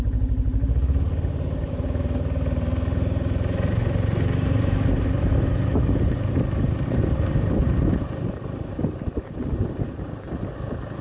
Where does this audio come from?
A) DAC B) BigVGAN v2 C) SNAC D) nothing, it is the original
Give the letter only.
B